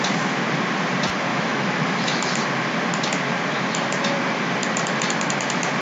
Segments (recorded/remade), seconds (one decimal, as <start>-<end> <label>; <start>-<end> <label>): 0.0-1.3 recorded; 1.3-2.3 remade; 2.3-5.8 recorded